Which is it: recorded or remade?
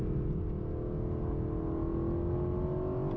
recorded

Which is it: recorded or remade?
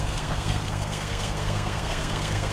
remade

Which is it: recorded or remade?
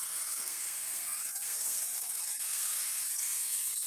remade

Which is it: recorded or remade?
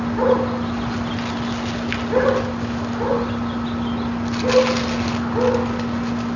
recorded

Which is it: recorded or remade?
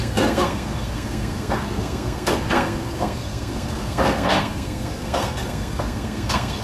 remade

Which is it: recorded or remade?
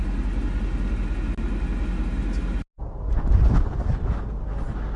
recorded